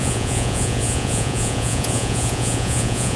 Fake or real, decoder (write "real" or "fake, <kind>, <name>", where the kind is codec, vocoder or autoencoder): fake, vocoder, Vocos